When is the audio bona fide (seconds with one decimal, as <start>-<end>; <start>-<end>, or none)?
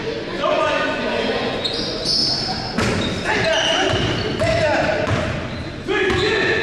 2.2-6.1